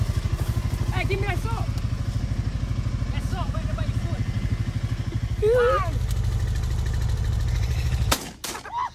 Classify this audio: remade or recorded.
recorded